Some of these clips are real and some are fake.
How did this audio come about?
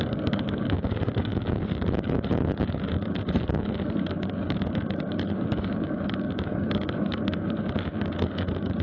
fake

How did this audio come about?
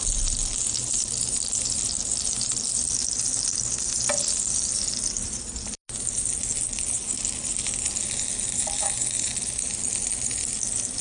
real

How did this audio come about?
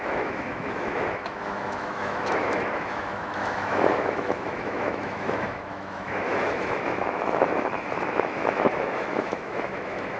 fake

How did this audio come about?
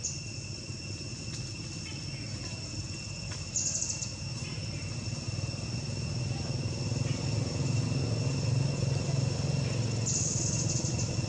real